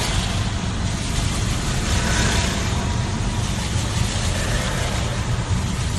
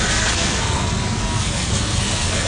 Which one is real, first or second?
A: first